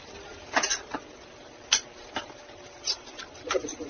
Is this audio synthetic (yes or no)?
yes